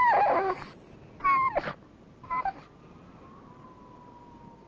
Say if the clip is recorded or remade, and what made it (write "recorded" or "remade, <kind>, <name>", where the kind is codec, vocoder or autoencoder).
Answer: recorded